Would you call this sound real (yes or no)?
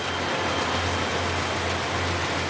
yes